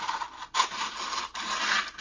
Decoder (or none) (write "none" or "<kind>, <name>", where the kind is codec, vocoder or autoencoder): none